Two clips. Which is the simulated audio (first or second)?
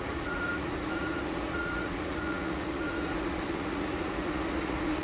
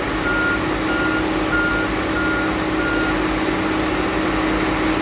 first